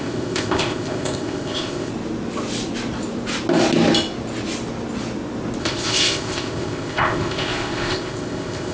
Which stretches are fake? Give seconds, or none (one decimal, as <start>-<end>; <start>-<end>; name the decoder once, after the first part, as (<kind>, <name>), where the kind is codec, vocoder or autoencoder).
0.0-1.9 (codec, ZipCodec); 5.6-8.7